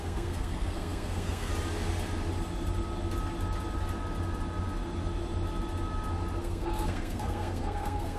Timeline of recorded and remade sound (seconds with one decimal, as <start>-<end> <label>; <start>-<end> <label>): 0.0-1.5 remade; 1.5-6.4 recorded; 6.4-8.2 remade